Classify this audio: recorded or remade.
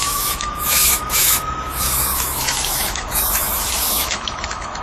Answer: remade